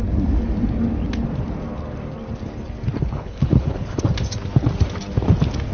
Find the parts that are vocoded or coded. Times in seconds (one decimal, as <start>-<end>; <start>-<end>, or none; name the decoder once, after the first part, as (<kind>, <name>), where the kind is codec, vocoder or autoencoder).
3.0-4.0 (codec, HILCodec)